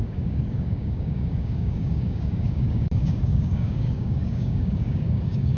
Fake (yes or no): yes